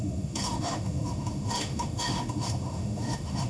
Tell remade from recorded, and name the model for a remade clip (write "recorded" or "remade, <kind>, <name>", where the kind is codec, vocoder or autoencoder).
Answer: remade, autoencoder, DAC-VAE